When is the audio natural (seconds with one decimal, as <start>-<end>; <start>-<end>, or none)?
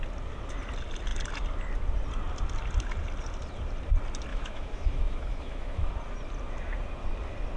0.0-4.3; 5.9-7.6